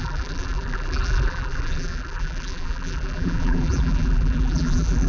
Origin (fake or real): fake